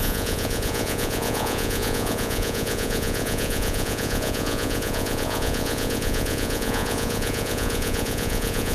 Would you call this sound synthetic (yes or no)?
yes